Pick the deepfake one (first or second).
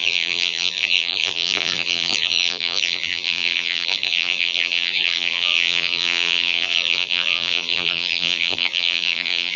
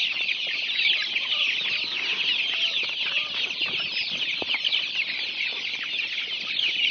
first